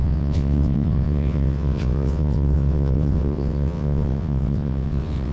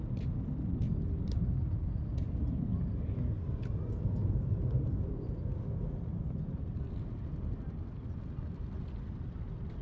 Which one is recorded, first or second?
second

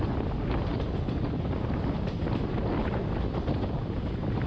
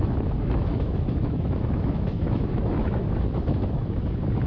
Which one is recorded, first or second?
first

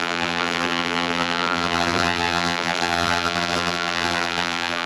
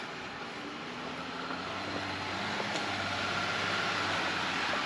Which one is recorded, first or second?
second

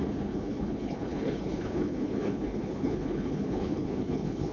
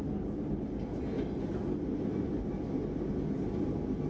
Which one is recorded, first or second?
second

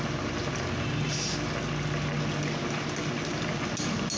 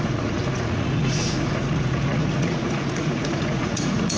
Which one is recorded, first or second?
first